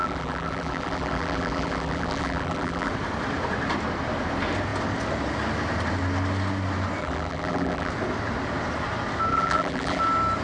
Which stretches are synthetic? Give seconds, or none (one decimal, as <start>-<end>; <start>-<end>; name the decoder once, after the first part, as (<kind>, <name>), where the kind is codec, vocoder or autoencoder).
0.0-2.9 (vocoder, BigVGAN v2); 7.0-7.9; 9.3-10.0